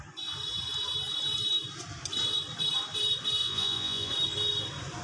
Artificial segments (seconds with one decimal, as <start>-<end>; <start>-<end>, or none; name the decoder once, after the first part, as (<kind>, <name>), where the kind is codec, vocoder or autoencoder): 3.4-4.1 (vocoder, Vocos)